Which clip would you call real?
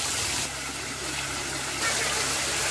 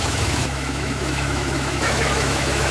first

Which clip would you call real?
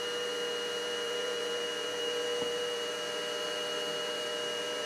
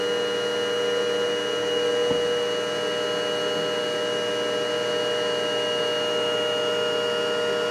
second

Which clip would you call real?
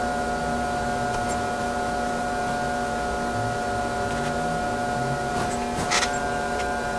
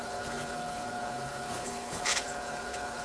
first